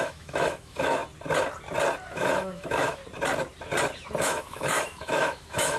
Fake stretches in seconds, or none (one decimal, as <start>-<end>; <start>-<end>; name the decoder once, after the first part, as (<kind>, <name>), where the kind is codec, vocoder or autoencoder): 0.0-1.0 (autoencoder, DAC-VAE); 2.1-3.0; 4.2-5.8